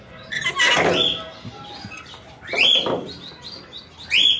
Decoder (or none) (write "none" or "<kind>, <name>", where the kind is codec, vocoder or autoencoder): none